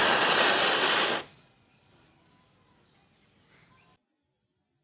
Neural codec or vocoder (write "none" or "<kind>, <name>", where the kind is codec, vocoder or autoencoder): none